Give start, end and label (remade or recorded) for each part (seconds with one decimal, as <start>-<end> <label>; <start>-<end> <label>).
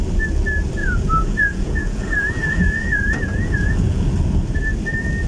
0.0-0.8 recorded; 0.8-4.0 remade; 4.0-5.3 recorded